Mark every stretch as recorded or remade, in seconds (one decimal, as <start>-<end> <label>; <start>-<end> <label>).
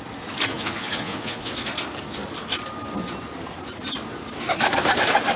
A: 0.0-0.5 recorded; 0.5-1.5 remade; 1.5-5.4 recorded